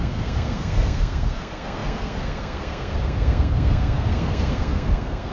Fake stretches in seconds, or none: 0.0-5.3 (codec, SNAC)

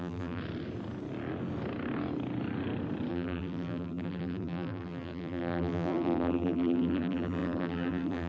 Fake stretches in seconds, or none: 0.0-0.4 (vocoder, BigVGAN v2); 3.1-8.3

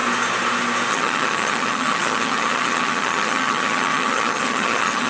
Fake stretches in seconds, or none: 0.9-5.1 (vocoder, HiFi-GAN)

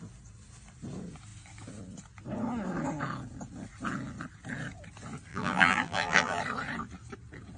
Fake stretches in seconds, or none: 5.3-6.4 (vocoder, BigVGAN v2)

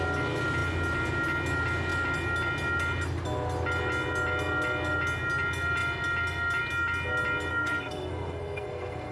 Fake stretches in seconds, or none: 7.5-9.1 (codec, SNAC)

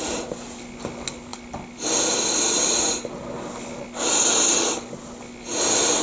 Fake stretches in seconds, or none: none